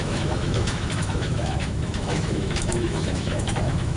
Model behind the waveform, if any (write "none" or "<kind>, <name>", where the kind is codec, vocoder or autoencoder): autoencoder, DAC-VAE